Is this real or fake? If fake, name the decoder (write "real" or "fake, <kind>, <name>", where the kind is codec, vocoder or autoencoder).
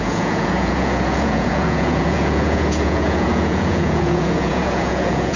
fake, vocoder, Vocos